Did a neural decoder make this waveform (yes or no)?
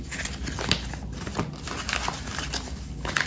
no